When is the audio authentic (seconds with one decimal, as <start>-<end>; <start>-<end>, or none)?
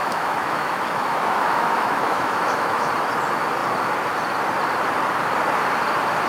2.9-6.3